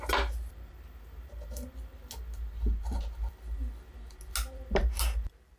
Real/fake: real